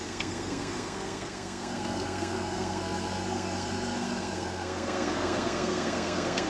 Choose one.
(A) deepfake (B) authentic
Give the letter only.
A